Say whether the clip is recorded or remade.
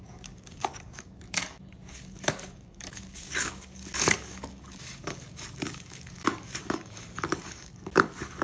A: remade